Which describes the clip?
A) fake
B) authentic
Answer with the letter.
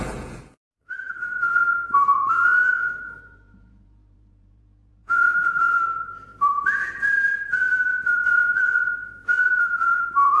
A